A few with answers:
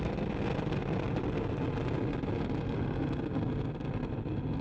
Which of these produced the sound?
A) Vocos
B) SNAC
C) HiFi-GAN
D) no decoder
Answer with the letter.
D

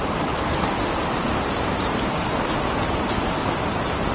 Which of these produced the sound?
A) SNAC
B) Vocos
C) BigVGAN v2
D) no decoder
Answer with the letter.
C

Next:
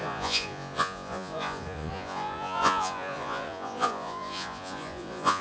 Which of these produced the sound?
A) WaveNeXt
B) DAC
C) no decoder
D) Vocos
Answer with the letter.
D